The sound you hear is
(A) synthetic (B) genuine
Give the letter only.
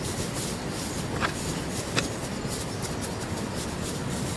B